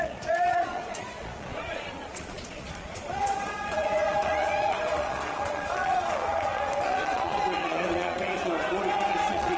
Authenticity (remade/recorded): remade